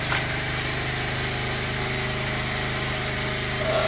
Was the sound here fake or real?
real